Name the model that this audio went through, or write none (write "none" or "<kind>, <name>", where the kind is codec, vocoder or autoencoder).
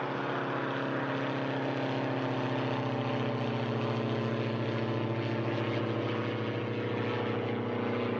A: none